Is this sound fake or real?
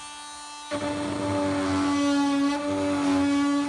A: real